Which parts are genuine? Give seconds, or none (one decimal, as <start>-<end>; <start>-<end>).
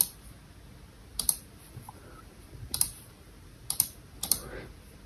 0.0-1.1; 4.2-5.1